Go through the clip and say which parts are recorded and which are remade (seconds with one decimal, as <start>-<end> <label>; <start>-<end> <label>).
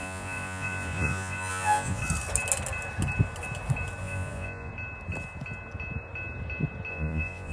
0.0-2.0 remade; 2.0-4.0 recorded; 4.0-4.7 remade; 4.7-6.9 recorded; 6.9-7.5 remade